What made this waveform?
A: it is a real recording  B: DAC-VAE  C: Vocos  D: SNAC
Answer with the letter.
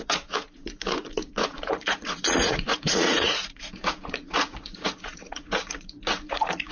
C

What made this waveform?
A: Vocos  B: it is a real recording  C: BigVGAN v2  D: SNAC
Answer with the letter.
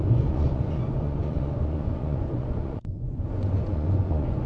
A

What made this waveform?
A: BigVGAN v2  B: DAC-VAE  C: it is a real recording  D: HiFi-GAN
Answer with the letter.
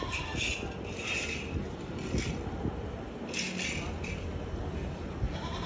C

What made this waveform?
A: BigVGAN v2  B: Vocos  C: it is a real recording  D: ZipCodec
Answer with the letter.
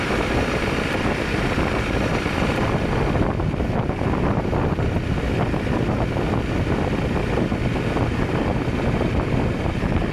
C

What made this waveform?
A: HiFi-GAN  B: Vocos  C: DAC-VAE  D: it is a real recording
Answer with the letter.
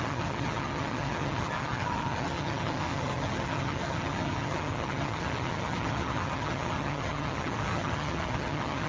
A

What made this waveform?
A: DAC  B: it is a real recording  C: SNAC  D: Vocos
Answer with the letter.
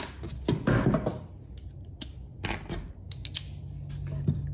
B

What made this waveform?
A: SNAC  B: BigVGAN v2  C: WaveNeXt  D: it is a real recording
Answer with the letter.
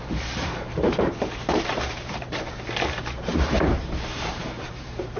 B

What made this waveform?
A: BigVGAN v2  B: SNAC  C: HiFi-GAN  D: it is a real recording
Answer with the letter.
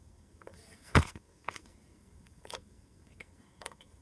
B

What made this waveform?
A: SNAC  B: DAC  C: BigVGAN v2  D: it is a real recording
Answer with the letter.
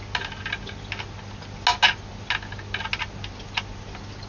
D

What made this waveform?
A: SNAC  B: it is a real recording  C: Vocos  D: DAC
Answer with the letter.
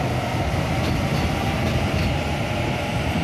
B